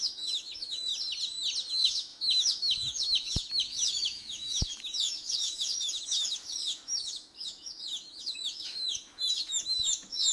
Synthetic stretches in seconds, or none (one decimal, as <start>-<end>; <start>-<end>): 0.0-0.9; 1.7-10.3